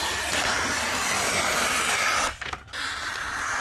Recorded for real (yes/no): yes